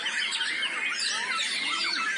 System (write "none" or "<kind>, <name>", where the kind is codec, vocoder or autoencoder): none